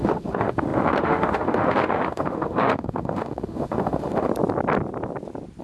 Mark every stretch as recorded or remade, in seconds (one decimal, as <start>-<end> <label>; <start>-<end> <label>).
0.0-4.3 remade; 4.3-5.6 recorded